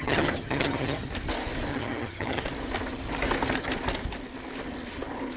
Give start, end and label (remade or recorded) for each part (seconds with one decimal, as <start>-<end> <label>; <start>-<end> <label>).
0.0-1.1 remade; 1.1-1.7 recorded; 1.7-2.4 remade; 2.4-5.4 recorded